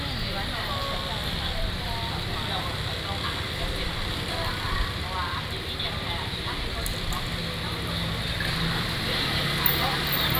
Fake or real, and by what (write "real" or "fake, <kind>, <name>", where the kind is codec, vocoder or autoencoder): real